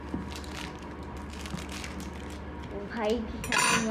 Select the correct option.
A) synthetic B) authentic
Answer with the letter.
B